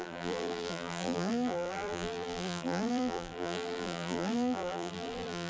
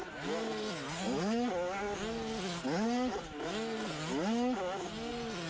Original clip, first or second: second